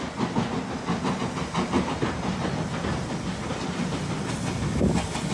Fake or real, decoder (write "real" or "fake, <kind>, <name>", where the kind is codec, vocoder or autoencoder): real